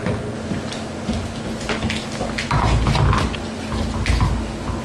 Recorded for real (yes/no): yes